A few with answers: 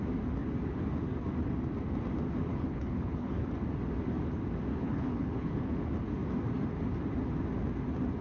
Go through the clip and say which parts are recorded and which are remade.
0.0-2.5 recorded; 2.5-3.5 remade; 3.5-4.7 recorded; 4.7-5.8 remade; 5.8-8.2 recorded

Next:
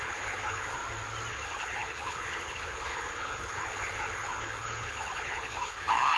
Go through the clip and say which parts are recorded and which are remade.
0.0-0.8 remade; 0.8-1.3 recorded; 1.3-6.2 remade

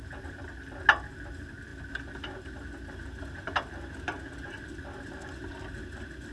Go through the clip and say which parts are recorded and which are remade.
0.0-6.3 recorded